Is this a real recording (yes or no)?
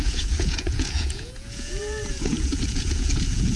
no